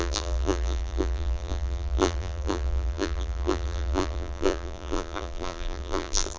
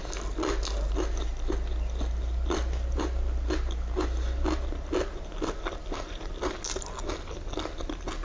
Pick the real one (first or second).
second